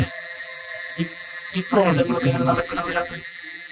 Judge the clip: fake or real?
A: fake